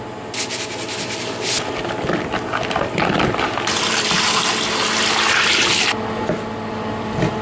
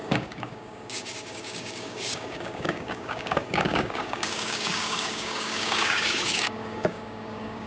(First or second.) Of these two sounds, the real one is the first